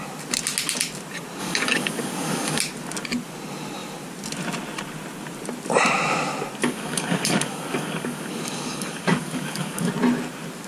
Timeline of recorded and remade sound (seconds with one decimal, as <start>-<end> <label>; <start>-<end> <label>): 0.0-1.4 recorded; 1.4-2.6 remade; 2.6-6.6 recorded; 6.6-9.9 remade; 9.9-10.7 recorded